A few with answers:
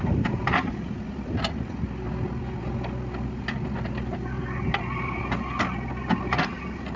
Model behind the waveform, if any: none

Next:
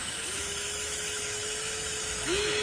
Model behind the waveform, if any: autoencoder, DAC-VAE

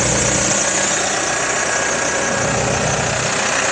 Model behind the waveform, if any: none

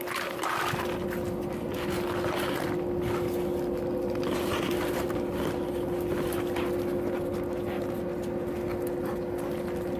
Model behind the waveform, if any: none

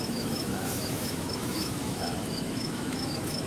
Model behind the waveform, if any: autoencoder, DAC-VAE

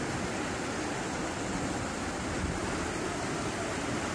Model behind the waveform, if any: none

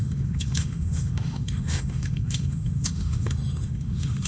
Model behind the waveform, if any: autoencoder, DAC-VAE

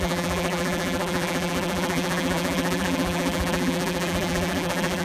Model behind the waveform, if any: vocoder, BigVGAN v2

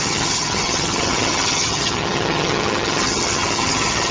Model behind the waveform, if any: vocoder, HiFi-GAN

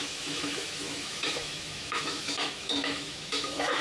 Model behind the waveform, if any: autoencoder, DAC-VAE